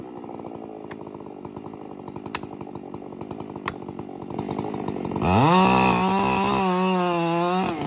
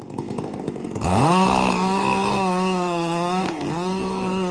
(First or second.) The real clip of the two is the first